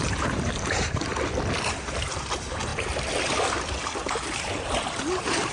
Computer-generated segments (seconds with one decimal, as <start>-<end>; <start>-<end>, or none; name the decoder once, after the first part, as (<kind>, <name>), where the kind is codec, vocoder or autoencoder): 0.0-1.1 (vocoder, BigVGAN v2); 1.8-2.7; 4.1-5.5